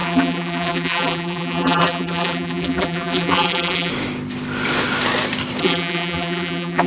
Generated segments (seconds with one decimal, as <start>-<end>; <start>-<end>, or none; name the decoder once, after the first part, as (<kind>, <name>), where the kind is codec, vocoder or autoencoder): 0.0-3.9 (vocoder, BigVGAN v2); 5.6-6.9